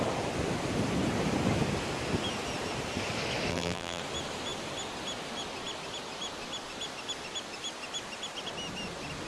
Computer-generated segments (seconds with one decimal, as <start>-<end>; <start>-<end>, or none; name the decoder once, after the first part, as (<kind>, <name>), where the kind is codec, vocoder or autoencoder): 3.5-4.0 (vocoder, BigVGAN v2)